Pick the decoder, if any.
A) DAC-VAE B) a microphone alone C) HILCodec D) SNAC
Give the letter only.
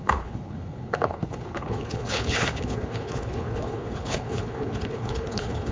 C